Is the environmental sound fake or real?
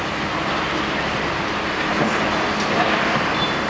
real